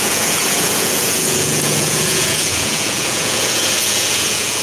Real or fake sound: fake